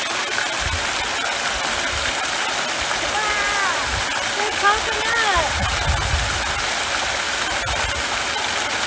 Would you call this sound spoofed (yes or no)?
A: no